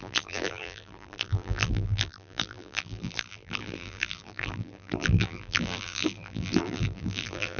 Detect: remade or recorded remade